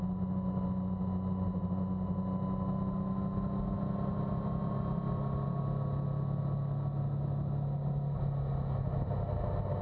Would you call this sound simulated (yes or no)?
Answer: no